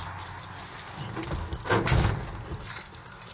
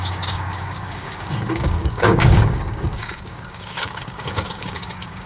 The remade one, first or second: second